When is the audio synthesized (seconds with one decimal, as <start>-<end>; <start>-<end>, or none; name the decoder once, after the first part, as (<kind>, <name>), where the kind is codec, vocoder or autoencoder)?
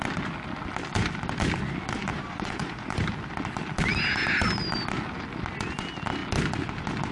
2.0-3.0 (vocoder, Vocos)